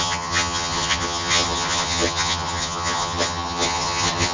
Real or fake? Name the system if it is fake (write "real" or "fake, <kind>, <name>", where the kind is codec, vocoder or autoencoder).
fake, vocoder, HiFi-GAN